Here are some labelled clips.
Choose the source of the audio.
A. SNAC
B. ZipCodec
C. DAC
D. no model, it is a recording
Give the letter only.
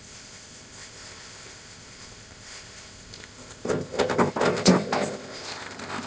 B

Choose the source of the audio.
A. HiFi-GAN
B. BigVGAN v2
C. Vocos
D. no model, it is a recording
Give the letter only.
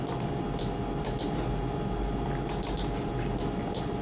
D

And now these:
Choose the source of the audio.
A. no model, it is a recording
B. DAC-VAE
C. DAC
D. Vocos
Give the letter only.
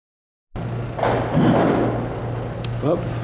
A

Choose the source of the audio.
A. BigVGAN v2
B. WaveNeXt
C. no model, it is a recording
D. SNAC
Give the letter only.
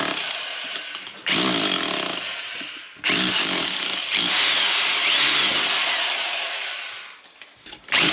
C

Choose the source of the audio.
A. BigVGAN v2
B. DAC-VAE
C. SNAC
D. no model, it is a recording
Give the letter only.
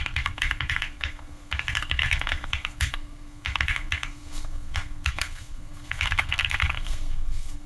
C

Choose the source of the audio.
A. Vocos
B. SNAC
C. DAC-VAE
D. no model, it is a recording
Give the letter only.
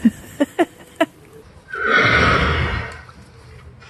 D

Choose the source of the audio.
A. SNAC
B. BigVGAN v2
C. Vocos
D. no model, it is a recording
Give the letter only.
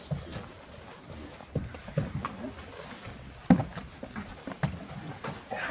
D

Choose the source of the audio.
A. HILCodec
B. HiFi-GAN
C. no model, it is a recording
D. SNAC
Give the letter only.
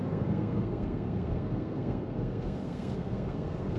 D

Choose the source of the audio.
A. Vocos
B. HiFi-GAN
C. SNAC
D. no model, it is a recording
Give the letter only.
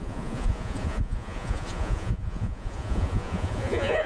A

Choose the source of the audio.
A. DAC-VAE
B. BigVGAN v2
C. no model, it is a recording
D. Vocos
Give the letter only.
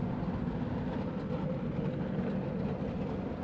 C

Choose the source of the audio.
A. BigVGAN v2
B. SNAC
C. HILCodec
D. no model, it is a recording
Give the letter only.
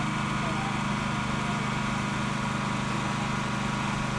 D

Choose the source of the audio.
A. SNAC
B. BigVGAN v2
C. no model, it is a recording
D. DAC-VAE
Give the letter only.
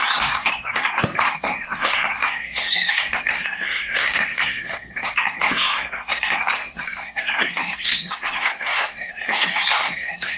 A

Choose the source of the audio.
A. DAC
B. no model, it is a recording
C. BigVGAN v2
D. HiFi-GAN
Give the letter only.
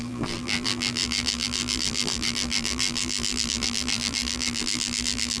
C